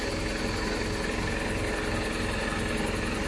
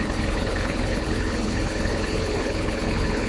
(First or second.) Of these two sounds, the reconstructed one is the second